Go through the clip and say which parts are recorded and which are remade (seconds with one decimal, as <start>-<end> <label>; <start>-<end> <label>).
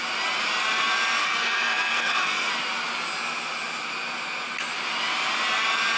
0.0-1.2 recorded; 1.2-2.5 remade; 2.5-6.0 recorded